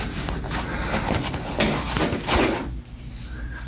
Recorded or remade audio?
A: recorded